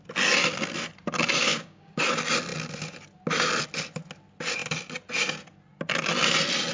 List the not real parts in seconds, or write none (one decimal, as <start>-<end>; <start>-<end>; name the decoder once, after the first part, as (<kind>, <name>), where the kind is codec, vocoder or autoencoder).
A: 1.4-2.0 (codec, DAC)